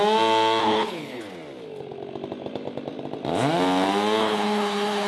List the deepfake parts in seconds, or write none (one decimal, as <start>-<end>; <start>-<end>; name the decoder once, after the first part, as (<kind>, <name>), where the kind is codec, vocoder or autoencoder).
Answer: 0.6-1.2 (codec, HILCodec); 4.2-5.1